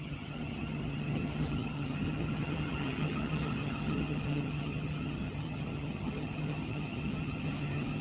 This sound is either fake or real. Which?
fake